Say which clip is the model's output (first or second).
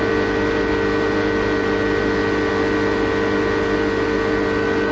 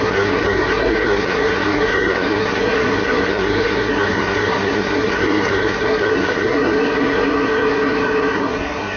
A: second